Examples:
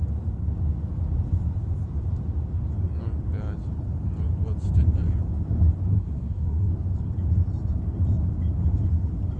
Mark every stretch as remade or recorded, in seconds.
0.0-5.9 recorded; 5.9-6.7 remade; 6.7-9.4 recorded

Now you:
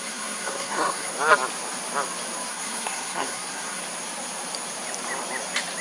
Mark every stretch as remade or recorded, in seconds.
0.0-1.1 remade; 1.1-2.5 recorded; 2.5-3.8 remade; 3.8-5.8 recorded

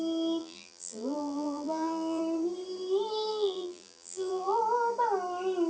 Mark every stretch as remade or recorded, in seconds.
0.0-0.4 recorded; 0.4-2.2 remade; 2.2-3.3 recorded; 3.3-4.6 remade; 4.6-5.7 recorded

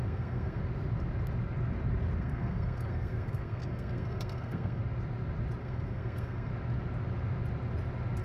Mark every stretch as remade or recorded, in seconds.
0.0-0.6 remade; 0.6-2.2 recorded; 2.2-4.8 remade; 4.8-5.6 recorded; 5.6-6.5 remade; 6.5-8.2 recorded

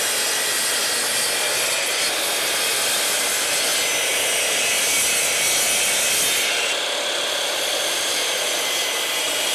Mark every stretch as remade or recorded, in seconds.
0.0-0.8 remade; 0.8-2.3 recorded; 2.3-3.7 remade; 3.7-6.3 recorded; 6.3-9.5 remade

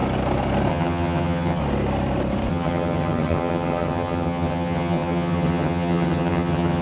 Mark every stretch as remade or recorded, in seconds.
0.0-0.7 recorded; 0.7-1.6 remade; 1.6-2.5 recorded; 2.5-6.8 remade

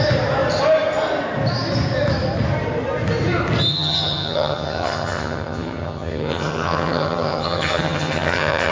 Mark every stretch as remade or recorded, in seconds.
0.0-3.7 recorded; 3.7-8.7 remade

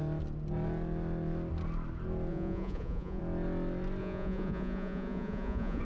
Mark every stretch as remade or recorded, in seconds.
0.0-2.3 recorded; 2.3-3.2 remade; 3.2-4.0 recorded; 4.0-5.8 remade